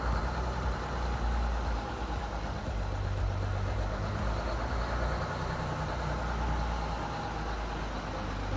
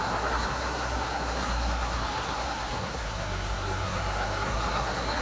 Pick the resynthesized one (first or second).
second